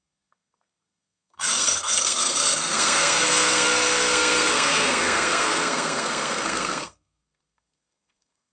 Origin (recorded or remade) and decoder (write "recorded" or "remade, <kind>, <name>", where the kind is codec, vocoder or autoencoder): remade, codec, SNAC